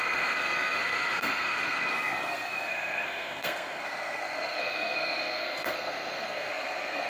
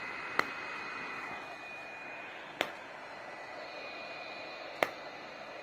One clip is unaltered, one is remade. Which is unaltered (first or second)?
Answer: second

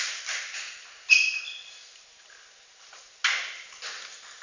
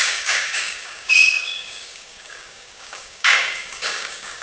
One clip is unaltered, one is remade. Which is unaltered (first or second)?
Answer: first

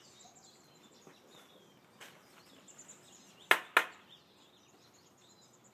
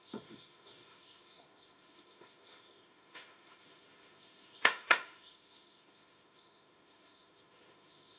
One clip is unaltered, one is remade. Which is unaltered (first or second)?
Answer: first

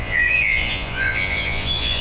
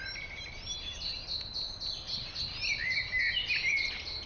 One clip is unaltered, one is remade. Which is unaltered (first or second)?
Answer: second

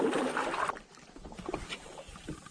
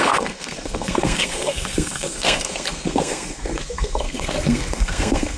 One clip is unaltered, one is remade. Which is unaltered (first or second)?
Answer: first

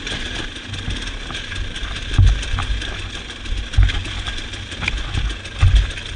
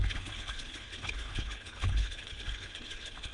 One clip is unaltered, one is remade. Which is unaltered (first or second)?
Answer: first